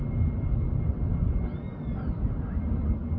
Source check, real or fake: real